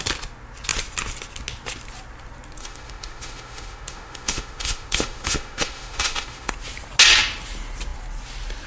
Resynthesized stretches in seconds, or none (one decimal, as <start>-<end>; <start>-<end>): 2.6-6.5